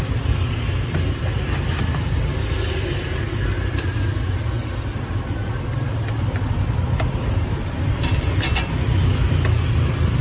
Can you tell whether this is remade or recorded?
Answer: recorded